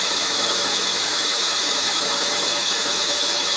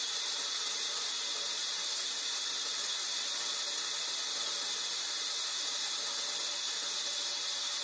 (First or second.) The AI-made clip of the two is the first